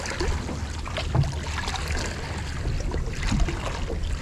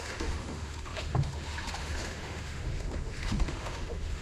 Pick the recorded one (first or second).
first